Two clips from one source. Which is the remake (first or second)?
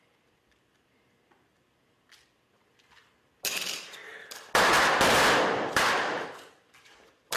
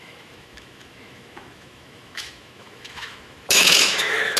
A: second